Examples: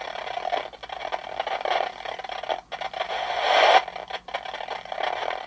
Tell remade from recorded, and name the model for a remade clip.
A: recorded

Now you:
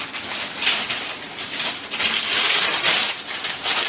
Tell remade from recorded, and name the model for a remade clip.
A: recorded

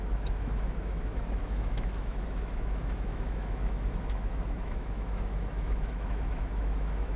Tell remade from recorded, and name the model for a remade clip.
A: remade, autoencoder, DAC-VAE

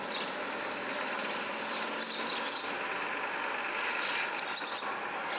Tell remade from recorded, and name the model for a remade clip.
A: recorded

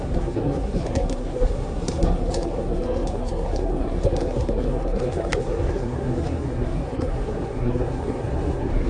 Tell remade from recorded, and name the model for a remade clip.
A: remade, codec, SNAC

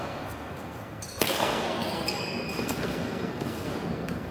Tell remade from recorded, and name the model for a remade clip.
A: remade, codec, SNAC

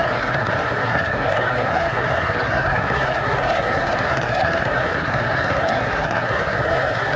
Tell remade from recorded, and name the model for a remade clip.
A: remade, codec, SNAC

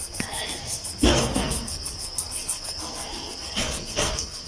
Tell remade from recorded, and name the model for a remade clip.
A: remade, codec, SNAC